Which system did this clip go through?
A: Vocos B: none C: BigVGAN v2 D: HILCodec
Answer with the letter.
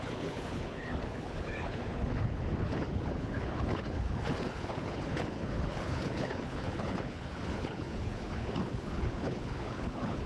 D